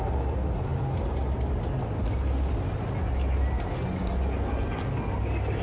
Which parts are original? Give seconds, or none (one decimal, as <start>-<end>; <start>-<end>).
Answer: 0.0-5.6